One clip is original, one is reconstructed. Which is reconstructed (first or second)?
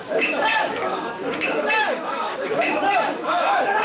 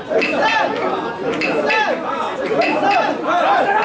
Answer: first